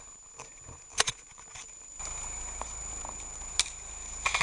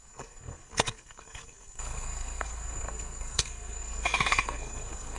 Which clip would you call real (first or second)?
first